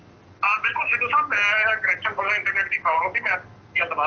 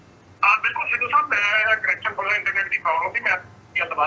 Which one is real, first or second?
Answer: first